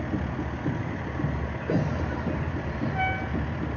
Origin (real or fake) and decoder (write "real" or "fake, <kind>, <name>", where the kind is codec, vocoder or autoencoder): real